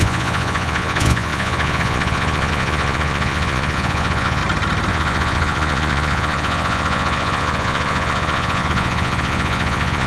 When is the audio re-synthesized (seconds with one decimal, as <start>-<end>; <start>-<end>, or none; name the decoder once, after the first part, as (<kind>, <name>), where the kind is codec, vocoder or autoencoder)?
0.0-4.4 (vocoder, Vocos); 4.9-10.1